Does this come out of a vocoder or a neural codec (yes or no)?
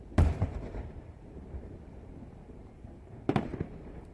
yes